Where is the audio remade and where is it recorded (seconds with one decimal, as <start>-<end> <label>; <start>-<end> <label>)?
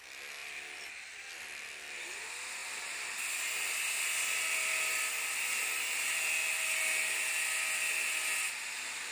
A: 0.0-9.1 recorded